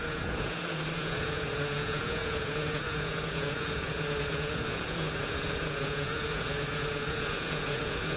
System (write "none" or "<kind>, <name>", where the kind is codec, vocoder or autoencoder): vocoder, Vocos